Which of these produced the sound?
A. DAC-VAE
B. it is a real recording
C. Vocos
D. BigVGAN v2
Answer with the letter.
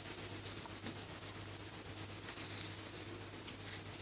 B